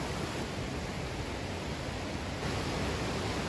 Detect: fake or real real